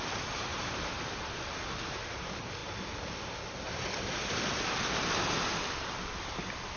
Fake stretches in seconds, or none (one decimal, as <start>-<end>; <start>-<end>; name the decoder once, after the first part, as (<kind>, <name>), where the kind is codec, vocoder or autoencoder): 0.0-2.6 (vocoder, BigVGAN v2)